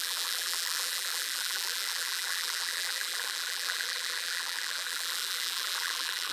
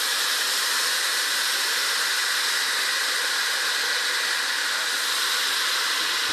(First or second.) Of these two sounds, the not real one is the first